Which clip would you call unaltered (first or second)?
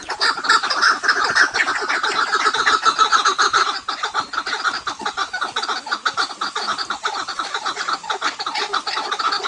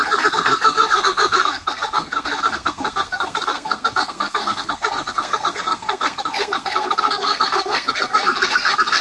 first